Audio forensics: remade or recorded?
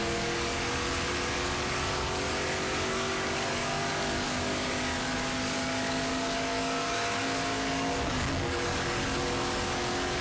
remade